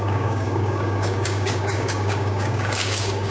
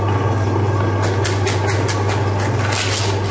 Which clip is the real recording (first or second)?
second